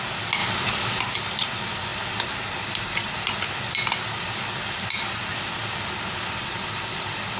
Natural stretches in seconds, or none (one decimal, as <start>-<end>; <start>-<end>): 0.0-7.4